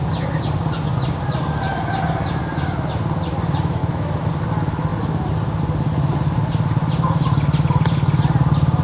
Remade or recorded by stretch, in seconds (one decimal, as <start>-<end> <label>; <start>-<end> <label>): 0.0-3.8 recorded; 3.8-4.3 remade; 4.3-8.8 recorded